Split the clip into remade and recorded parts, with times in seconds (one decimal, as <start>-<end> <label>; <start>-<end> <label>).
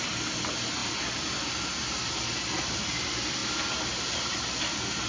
0.0-5.1 recorded